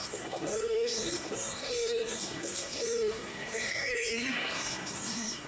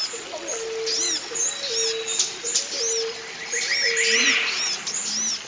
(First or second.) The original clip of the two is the second